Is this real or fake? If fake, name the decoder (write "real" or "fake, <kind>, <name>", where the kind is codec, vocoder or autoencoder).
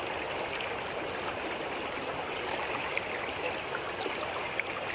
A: real